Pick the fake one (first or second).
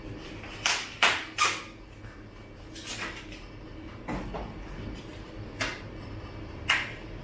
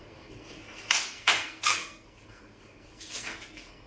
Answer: second